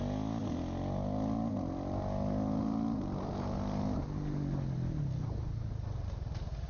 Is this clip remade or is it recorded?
recorded